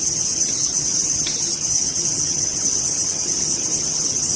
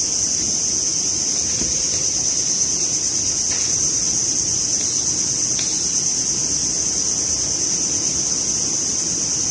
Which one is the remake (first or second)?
first